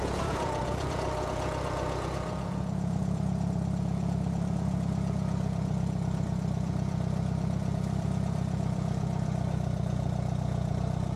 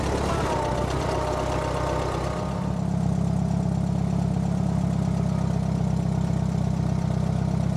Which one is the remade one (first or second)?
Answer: first